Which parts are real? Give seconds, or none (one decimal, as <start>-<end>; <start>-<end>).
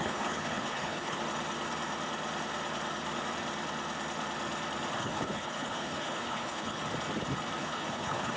1.2-5.0; 6.8-7.6